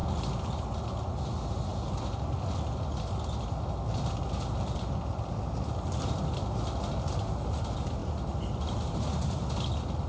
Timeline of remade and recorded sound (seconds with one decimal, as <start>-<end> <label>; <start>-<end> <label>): 0.0-10.1 recorded